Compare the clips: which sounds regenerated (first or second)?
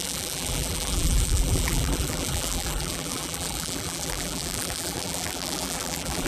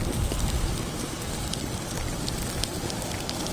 first